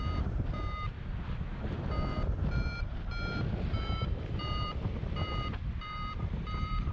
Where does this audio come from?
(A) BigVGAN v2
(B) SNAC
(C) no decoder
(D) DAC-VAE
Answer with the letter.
A